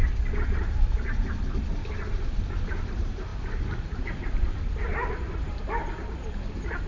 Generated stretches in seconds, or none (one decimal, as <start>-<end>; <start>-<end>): none